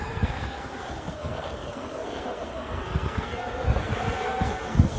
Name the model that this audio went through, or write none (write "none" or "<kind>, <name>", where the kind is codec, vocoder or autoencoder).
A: codec, SNAC